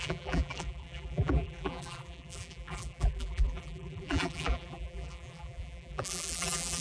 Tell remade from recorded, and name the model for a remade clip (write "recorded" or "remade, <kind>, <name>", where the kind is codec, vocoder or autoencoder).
remade, vocoder, BigVGAN v2